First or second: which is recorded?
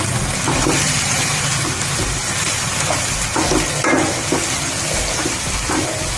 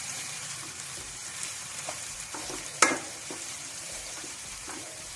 first